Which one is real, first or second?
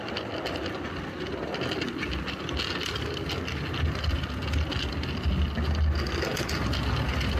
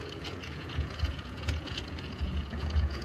first